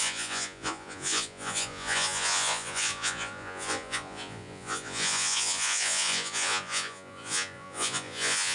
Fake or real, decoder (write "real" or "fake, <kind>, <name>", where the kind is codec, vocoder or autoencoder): fake, vocoder, Vocos